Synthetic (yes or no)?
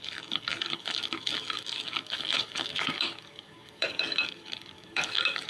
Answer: yes